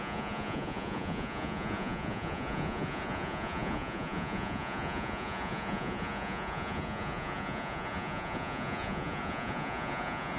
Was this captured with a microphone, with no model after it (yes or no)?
no